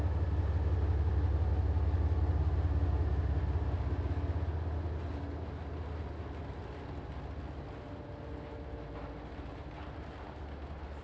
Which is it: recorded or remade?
recorded